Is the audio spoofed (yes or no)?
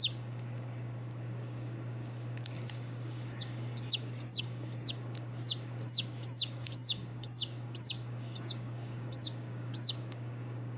yes